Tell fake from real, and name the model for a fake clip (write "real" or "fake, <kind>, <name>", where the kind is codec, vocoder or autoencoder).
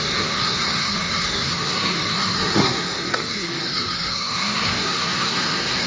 fake, codec, SNAC